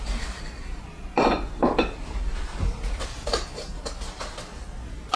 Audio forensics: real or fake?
real